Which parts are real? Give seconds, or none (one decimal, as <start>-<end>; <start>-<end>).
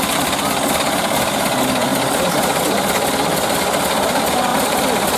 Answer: 0.0-1.9; 2.6-4.5